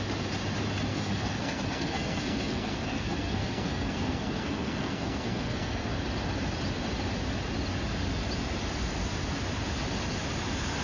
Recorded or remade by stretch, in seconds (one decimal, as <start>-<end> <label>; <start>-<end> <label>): 0.0-0.9 recorded; 0.9-5.9 remade; 5.9-10.8 recorded